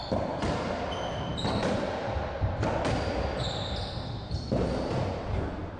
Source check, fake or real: real